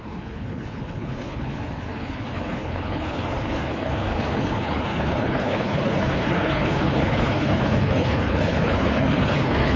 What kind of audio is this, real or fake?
fake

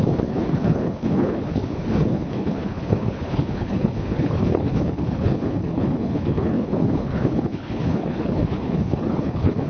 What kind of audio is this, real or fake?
fake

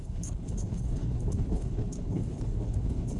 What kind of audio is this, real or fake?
fake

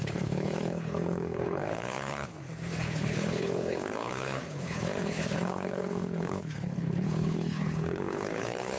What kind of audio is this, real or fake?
fake